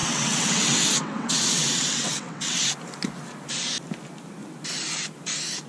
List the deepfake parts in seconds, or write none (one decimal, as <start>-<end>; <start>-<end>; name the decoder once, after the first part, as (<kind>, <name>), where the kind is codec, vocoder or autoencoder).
0.0-2.6 (vocoder, WaveNeXt)